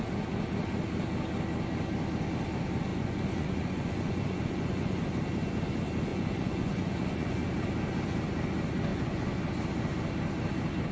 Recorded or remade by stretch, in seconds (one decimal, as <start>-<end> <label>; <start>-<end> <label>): 0.0-2.9 recorded; 2.9-5.0 remade; 5.0-6.1 recorded; 6.1-7.5 remade; 7.5-8.9 recorded; 8.9-9.4 remade; 9.4-10.9 recorded